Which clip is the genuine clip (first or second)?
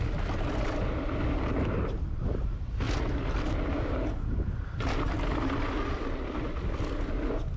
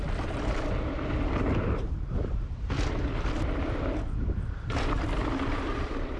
first